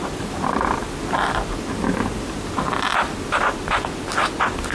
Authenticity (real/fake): real